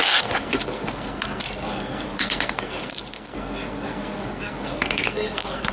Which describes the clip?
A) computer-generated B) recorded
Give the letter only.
A